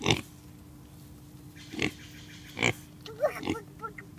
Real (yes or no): yes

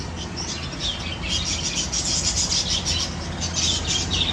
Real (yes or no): yes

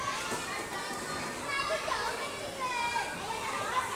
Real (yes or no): yes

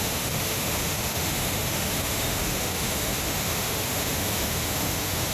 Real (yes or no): no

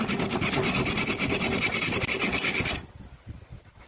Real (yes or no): yes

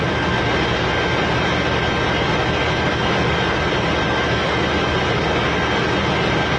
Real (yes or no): yes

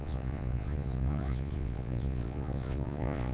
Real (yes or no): no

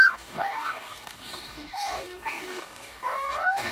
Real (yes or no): no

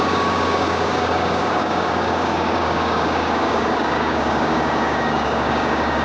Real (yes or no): no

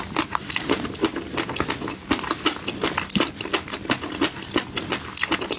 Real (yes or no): yes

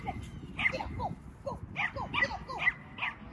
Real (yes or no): yes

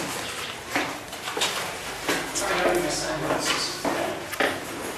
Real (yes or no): yes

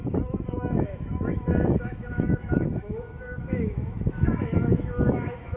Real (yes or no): no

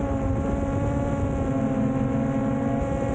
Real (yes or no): yes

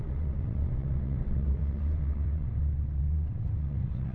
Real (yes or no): no